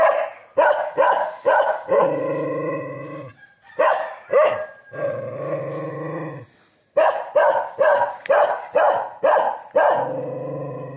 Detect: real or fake real